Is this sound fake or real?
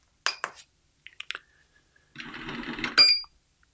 real